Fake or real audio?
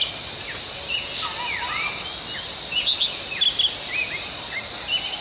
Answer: real